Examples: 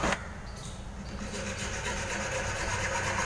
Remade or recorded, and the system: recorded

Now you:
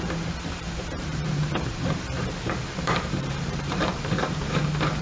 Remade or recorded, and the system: remade, vocoder, BigVGAN v2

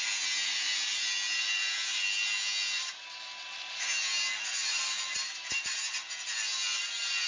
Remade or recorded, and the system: recorded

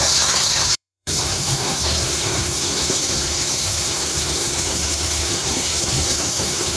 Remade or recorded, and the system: remade, codec, SNAC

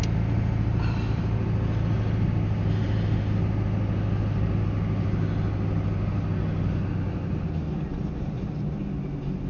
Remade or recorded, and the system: recorded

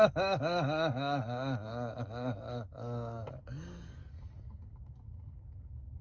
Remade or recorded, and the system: remade, codec, DAC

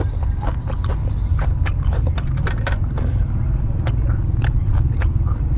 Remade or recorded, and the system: recorded